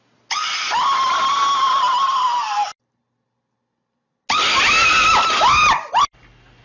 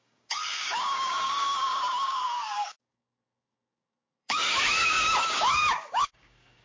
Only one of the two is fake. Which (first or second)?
second